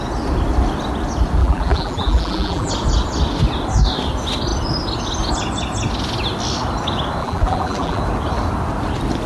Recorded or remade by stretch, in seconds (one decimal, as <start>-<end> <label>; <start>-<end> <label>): 0.0-1.4 recorded; 1.4-2.7 remade; 2.7-7.2 recorded; 7.2-8.0 remade; 8.0-9.3 recorded